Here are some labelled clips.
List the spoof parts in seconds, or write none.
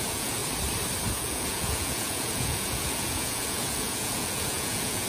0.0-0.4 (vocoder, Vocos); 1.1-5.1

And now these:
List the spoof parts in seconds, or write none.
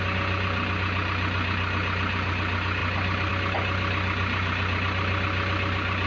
none